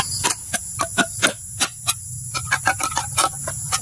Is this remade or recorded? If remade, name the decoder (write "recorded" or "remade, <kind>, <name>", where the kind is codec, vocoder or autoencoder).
recorded